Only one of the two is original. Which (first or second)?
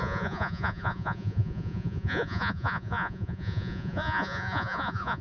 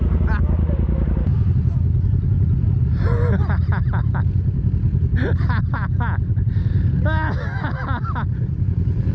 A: second